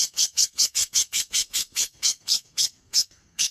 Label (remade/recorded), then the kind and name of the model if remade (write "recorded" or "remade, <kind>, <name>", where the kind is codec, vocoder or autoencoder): remade, codec, SNAC